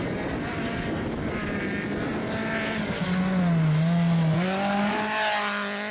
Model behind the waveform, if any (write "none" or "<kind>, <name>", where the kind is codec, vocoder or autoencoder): none